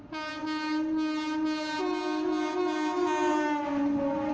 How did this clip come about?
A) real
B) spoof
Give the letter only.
A